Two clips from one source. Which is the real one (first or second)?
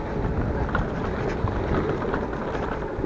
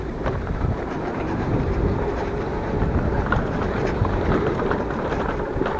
first